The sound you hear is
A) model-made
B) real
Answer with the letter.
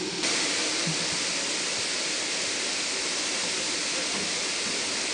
B